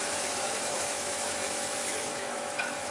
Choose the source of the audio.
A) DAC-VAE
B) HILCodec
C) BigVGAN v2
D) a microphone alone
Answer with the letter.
A